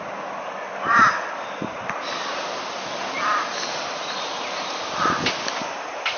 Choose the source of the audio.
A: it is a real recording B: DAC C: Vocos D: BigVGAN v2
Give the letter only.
A